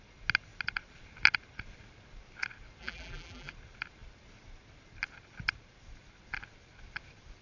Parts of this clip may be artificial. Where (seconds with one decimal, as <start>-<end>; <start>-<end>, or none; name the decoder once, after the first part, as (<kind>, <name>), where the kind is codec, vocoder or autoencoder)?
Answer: 2.8-3.5 (vocoder, BigVGAN v2)